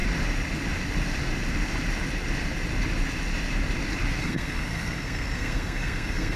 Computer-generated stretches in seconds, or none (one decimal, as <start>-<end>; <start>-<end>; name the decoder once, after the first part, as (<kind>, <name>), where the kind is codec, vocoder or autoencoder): 4.2-6.4 (codec, SNAC)